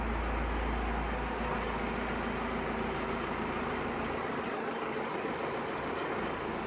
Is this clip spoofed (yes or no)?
no